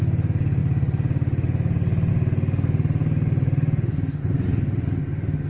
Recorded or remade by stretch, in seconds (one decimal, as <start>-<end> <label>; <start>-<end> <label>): 0.0-5.5 recorded